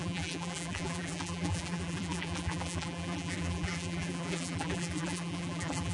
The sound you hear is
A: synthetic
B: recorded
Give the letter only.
A